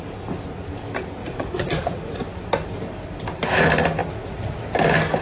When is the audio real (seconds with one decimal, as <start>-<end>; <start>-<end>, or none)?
0.0-1.2; 2.1-4.0; 4.6-5.2